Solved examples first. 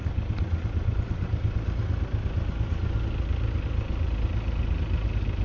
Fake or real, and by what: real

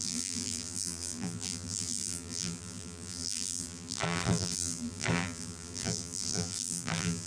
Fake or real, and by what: fake, vocoder, BigVGAN v2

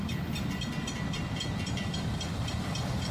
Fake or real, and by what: fake, vocoder, BigVGAN v2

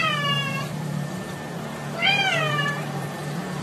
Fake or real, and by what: fake, vocoder, BigVGAN v2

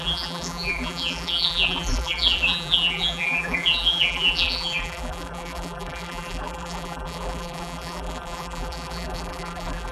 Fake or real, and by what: fake, vocoder, BigVGAN v2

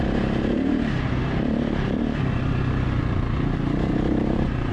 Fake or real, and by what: fake, vocoder, BigVGAN v2